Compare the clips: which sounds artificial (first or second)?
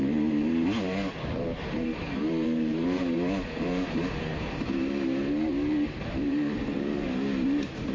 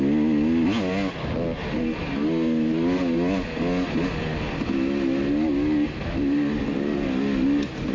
first